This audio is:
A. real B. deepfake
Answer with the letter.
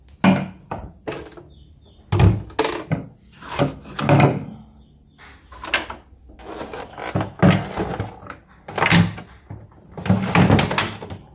A